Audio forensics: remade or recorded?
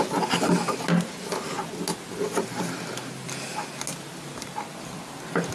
recorded